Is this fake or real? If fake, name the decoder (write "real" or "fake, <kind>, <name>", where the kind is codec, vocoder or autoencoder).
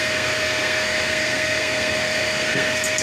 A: fake, codec, SNAC